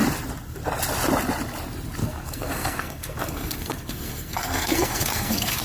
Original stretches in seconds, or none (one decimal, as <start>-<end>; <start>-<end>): 0.0-2.0